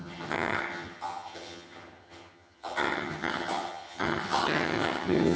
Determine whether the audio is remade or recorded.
remade